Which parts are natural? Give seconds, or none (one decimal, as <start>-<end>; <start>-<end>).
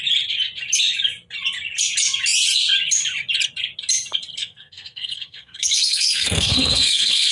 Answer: 0.0-4.4